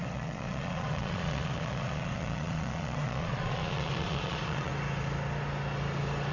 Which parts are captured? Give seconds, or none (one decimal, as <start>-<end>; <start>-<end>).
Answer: 4.7-6.3